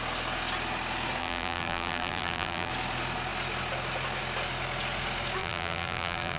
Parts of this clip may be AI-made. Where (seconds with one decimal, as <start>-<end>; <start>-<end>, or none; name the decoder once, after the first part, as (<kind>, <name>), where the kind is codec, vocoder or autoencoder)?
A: 1.2-2.7 (vocoder, BigVGAN v2); 5.4-6.4